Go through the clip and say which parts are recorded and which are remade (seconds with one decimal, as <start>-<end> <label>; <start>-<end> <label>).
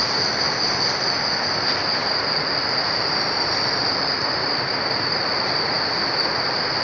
0.0-2.0 recorded; 2.0-5.5 remade; 5.5-6.8 recorded